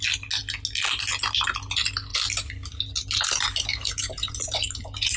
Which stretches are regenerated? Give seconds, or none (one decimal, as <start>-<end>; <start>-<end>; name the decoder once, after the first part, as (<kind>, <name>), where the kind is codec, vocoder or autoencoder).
2.1-5.2 (vocoder, BigVGAN v2)